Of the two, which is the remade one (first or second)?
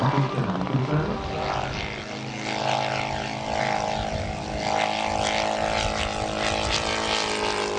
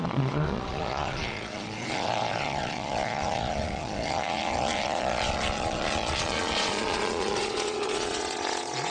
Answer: second